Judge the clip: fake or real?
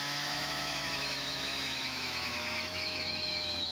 fake